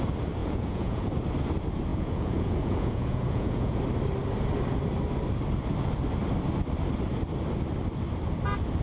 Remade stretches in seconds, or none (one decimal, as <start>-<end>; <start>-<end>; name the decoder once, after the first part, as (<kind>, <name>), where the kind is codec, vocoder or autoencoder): 0.4-1.1 (vocoder, Vocos); 1.9-3.8